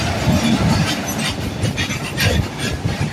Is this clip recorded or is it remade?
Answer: recorded